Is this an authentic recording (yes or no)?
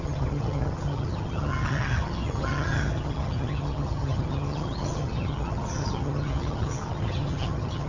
no